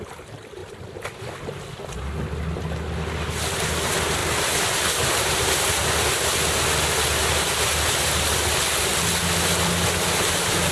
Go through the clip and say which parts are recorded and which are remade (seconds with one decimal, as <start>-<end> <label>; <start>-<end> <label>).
0.0-10.7 recorded